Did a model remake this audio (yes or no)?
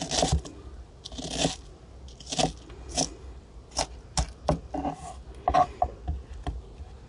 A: no